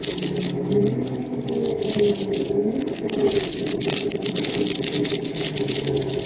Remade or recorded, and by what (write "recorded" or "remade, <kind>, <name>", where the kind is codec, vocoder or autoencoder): recorded